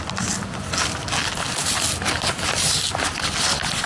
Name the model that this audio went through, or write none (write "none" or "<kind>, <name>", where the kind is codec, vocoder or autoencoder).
none